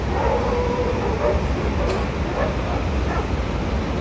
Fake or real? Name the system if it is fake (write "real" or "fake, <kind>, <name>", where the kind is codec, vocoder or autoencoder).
real